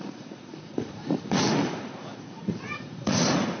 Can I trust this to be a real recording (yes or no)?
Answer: no